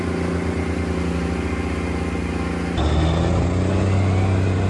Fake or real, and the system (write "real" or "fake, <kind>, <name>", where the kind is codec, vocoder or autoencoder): real